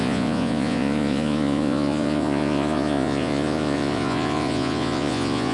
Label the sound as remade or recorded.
remade